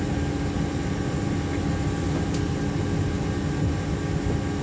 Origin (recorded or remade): recorded